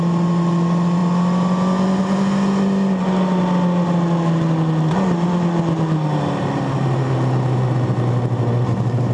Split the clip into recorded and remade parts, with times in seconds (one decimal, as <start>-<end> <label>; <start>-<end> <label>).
0.0-9.1 recorded